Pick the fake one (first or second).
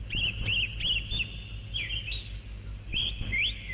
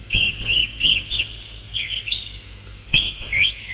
second